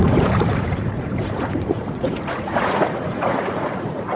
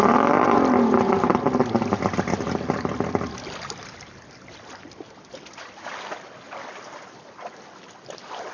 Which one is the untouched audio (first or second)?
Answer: second